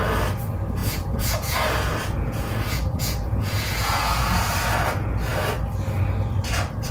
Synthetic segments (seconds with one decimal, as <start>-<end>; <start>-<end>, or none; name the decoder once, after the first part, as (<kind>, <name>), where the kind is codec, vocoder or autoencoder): 0.8-4.6 (vocoder, Vocos)